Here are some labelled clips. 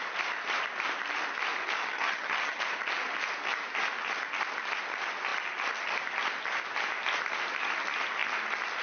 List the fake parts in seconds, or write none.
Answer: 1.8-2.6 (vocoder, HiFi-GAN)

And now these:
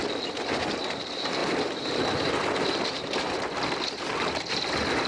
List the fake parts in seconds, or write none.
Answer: none

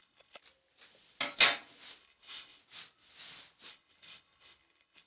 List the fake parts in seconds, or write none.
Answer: 0.0-0.4 (codec, HILCodec); 2.0-2.6; 3.7-5.1